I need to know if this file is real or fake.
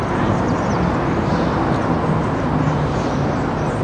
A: real